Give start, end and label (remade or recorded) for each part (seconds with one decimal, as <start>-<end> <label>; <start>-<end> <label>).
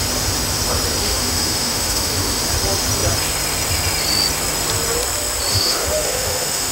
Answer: 0.0-1.0 recorded; 1.0-2.4 remade; 2.4-5.5 recorded; 5.5-6.7 remade